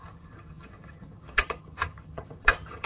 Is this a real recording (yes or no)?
no